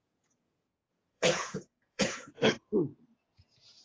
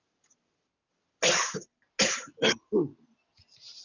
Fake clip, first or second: first